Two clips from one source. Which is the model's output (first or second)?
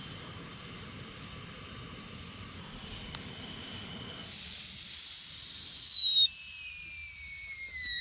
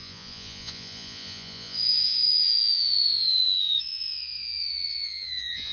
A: second